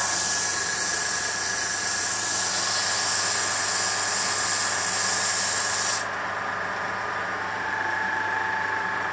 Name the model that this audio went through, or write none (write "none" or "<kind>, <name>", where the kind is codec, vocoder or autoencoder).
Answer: none